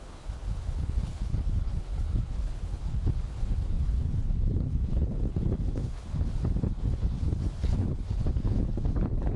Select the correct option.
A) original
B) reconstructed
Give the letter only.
B